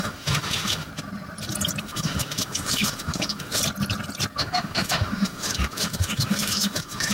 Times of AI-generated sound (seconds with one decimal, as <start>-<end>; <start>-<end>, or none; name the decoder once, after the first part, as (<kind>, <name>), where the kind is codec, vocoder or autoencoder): 0.0-0.9 (autoencoder, DAC-VAE); 1.8-3.6; 4.4-7.1